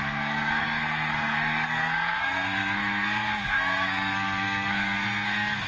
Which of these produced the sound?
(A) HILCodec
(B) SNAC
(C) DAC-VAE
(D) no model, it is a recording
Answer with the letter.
B